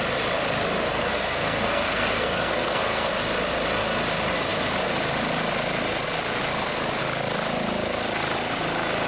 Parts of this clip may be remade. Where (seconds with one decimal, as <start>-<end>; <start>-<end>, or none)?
0.9-3.1